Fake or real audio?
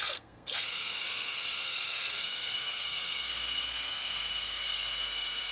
fake